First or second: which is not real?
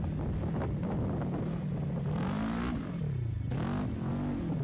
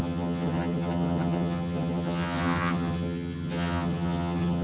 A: second